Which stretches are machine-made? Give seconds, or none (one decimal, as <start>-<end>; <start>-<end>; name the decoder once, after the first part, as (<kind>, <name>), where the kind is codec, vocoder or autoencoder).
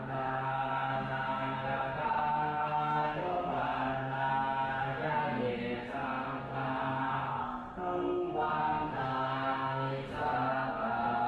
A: 0.0-4.3 (codec, SNAC); 4.8-11.3